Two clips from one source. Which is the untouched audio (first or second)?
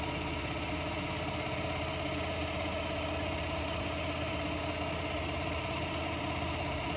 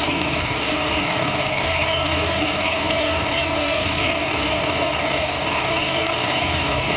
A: first